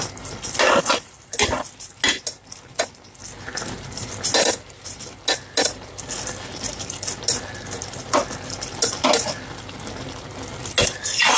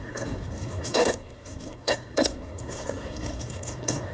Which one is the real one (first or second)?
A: first